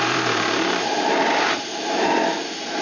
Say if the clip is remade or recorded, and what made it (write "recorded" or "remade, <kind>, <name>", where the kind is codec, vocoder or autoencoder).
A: remade, vocoder, BigVGAN v2